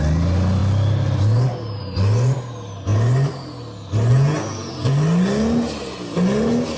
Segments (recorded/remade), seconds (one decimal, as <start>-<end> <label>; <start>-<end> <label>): 0.0-6.8 recorded